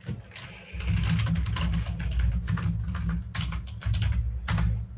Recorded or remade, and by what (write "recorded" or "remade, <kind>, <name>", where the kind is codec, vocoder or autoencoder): recorded